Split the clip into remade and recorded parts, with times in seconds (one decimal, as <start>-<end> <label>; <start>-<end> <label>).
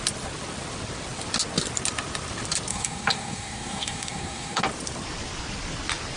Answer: 0.0-2.7 recorded; 2.7-4.6 remade; 4.6-6.2 recorded